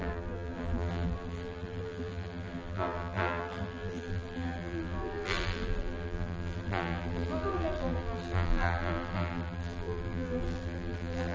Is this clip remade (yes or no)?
yes